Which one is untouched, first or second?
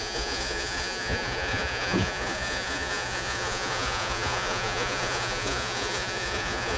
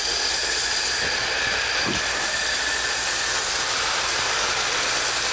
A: second